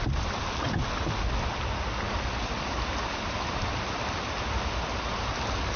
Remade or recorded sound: recorded